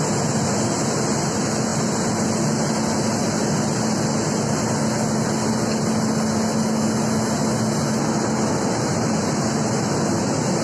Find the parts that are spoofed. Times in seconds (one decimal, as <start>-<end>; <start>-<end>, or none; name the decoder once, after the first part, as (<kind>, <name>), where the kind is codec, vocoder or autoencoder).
none

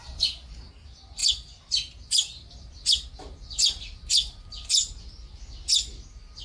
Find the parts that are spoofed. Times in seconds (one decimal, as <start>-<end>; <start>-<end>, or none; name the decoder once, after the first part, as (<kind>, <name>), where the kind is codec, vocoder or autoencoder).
0.0-0.6 (vocoder, Vocos)

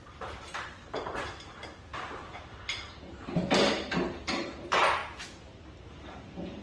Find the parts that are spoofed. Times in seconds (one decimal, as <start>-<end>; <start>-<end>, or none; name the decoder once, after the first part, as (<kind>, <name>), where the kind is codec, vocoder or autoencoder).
0.0-1.9 (vocoder, BigVGAN v2); 2.5-5.0; 5.9-6.6

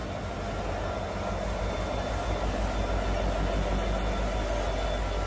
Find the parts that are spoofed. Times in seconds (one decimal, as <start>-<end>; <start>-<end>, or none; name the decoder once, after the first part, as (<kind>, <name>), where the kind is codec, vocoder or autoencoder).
none

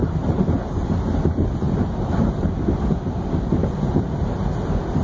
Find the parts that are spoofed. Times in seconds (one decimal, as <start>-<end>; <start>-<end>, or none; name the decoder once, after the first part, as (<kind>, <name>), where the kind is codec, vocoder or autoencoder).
none